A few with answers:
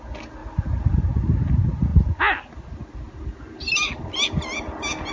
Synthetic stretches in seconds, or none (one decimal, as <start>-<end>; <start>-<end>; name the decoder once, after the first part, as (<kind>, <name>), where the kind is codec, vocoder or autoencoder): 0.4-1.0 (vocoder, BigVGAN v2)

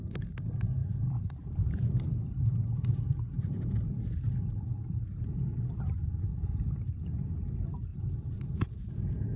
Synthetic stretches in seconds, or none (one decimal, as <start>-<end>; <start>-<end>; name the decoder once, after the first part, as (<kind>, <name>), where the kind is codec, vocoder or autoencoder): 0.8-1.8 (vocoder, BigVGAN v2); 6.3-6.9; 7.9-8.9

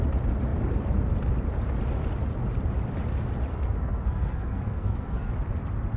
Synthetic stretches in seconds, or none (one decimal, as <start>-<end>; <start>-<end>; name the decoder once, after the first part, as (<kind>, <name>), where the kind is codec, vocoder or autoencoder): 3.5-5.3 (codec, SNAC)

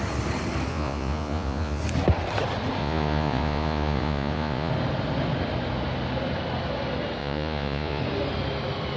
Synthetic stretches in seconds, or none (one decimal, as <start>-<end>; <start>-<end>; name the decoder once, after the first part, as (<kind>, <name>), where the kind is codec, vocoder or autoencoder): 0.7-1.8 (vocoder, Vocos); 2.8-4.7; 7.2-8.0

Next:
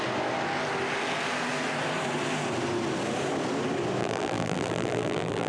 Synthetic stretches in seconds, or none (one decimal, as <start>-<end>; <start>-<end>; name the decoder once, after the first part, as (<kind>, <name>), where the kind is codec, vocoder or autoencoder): 4.0-5.5 (vocoder, BigVGAN v2)

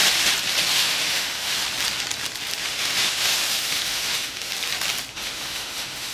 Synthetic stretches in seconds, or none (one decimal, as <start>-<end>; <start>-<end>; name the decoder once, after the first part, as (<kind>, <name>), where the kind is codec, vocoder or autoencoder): 0.7-1.6 (autoencoder, DAC-VAE); 2.6-4.5; 5.1-6.1